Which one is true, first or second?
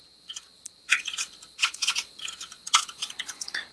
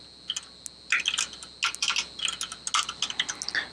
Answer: second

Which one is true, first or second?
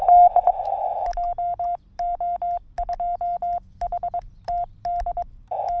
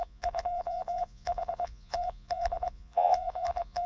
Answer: first